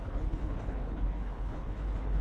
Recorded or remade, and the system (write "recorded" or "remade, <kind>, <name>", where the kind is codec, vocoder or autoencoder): remade, codec, HILCodec